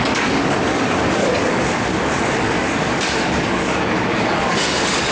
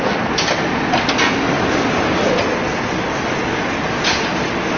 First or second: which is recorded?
second